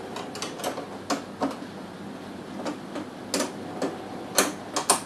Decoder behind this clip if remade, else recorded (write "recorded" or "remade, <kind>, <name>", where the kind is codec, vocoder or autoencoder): recorded